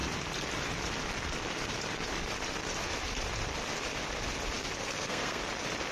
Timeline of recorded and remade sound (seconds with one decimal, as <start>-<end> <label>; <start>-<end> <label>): 0.0-4.8 recorded; 4.8-5.4 remade; 5.4-5.9 recorded